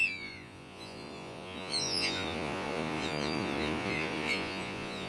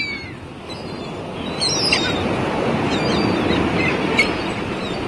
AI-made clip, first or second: first